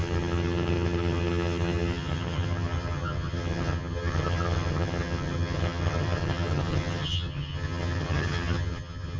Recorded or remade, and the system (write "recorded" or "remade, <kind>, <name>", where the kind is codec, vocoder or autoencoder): remade, vocoder, HiFi-GAN